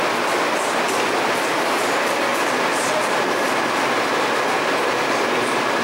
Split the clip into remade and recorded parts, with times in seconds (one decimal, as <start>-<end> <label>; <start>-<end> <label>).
0.0-2.3 recorded; 2.3-3.5 remade; 3.5-5.8 recorded